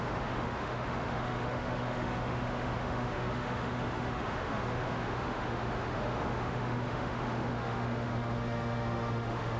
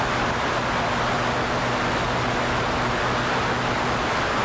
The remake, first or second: first